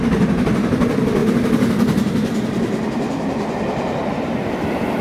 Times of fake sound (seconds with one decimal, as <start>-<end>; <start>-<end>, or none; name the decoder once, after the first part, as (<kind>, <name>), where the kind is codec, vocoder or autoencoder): none